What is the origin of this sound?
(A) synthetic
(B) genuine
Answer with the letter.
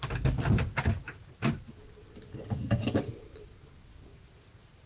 B